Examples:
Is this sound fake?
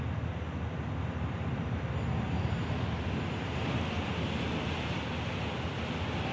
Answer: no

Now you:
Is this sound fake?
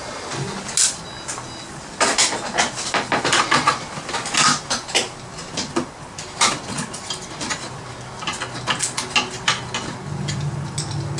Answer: no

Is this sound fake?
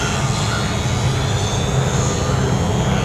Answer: no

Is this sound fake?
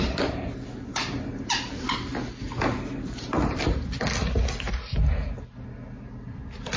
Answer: no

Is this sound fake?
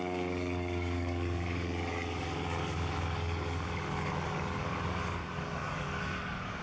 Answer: yes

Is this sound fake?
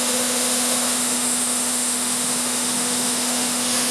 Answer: yes